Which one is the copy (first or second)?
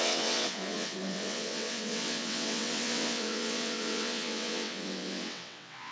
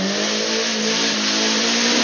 first